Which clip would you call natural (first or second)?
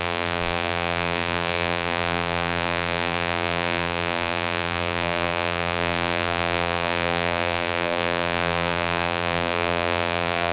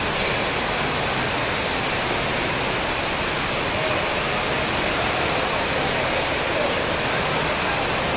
second